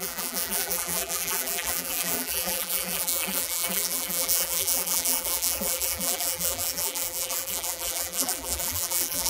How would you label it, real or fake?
fake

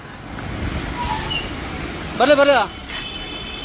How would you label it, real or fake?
real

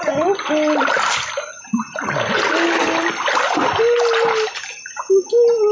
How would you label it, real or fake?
real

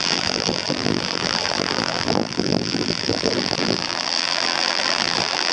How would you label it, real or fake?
fake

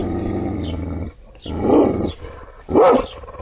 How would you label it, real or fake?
real